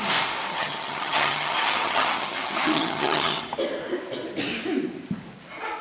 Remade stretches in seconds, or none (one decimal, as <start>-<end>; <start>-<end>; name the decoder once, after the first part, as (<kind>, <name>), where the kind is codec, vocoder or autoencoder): 0.5-3.4 (vocoder, HiFi-GAN)